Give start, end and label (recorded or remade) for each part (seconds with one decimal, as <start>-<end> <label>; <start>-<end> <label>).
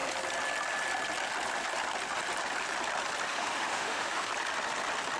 0.0-3.3 recorded; 3.3-4.3 remade; 4.3-5.2 recorded